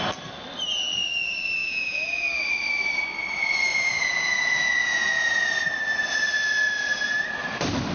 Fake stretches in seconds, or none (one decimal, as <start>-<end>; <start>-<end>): 1.6-2.2; 3.7-5.5